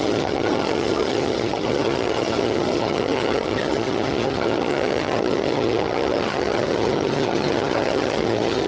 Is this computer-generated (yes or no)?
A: yes